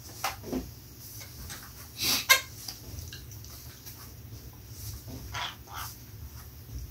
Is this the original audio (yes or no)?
yes